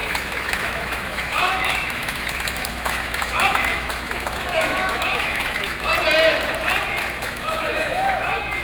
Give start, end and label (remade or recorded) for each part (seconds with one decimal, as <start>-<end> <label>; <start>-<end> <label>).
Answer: 0.0-5.9 remade; 5.9-7.2 recorded; 7.2-8.6 remade